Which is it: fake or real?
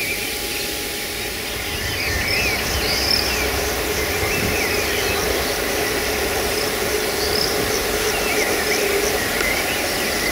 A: real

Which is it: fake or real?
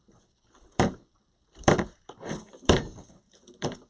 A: fake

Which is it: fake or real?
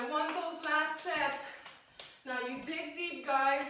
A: fake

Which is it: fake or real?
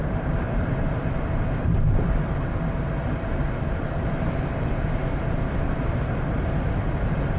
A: fake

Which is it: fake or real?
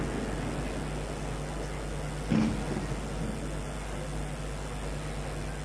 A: real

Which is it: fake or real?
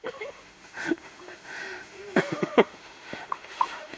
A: fake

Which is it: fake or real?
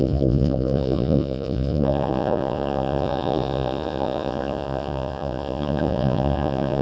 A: fake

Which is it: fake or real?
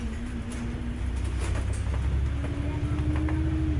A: real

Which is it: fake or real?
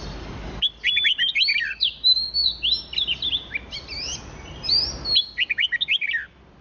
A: real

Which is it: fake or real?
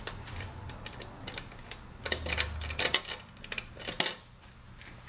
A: real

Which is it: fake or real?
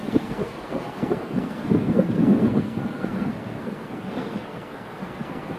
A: fake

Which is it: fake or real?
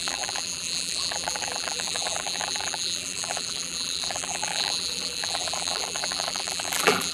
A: fake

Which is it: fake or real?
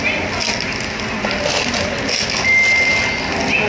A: real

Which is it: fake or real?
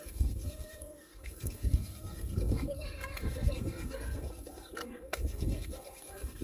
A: fake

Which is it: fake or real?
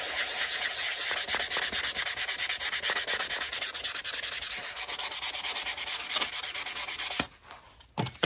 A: real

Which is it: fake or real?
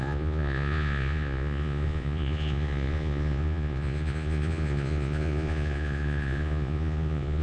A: fake